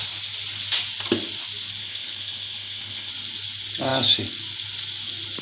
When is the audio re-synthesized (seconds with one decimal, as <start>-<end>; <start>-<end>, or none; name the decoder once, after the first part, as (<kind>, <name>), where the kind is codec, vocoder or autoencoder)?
1.8-3.1 (codec, HILCodec)